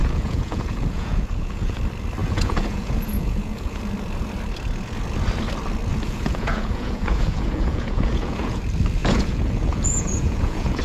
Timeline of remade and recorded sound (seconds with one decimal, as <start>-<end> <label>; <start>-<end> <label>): 0.0-1.8 remade; 1.8-2.2 recorded; 2.2-3.8 remade; 3.8-5.9 recorded; 5.9-8.6 remade; 8.6-9.0 recorded; 9.0-10.8 remade